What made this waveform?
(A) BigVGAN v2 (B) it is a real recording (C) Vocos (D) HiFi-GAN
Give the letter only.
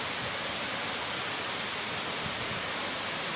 B